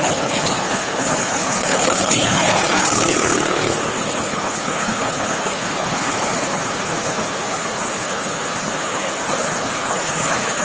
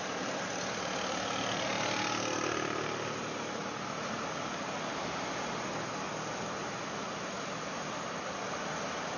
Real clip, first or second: second